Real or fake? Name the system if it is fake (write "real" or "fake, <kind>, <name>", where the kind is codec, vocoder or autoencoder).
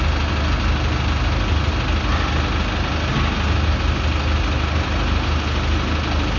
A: real